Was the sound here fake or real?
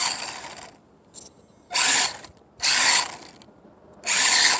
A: real